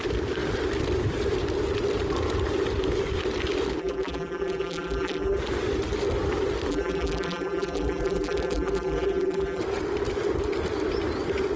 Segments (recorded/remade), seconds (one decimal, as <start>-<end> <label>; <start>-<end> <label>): 0.0-3.8 recorded; 3.8-5.4 remade; 5.4-6.7 recorded; 6.7-9.6 remade; 9.6-11.6 recorded